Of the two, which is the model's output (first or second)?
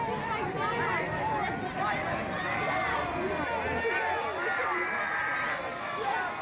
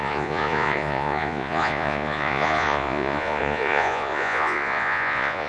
second